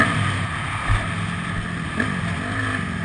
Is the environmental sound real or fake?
real